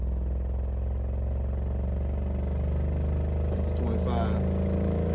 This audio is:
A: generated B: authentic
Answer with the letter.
B